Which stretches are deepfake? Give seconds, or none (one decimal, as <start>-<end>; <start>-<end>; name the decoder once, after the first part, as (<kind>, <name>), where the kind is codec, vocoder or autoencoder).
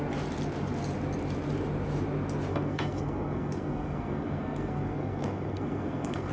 2.5-6.3 (codec, SNAC)